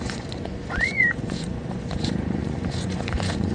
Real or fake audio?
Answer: fake